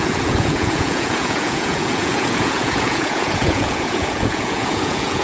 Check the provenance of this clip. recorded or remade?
remade